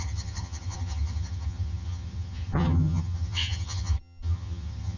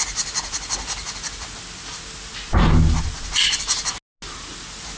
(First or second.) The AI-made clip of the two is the first